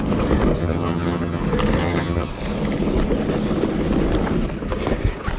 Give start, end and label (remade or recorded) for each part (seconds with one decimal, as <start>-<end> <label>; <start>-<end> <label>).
0.0-0.6 recorded; 0.6-1.4 remade; 1.4-1.8 recorded; 1.8-2.3 remade; 2.3-5.4 recorded